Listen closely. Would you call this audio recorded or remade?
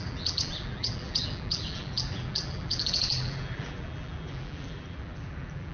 remade